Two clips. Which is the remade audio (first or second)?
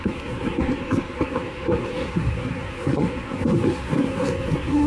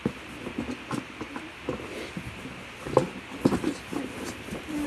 first